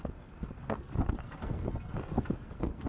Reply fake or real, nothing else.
fake